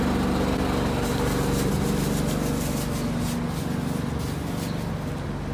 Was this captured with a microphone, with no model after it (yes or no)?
yes